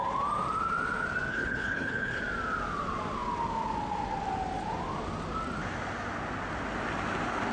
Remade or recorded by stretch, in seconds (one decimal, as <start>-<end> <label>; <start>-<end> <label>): 0.0-1.3 recorded; 1.3-2.2 remade; 2.2-7.5 recorded